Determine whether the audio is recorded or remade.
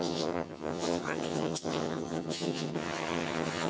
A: remade